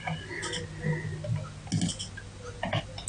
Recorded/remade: recorded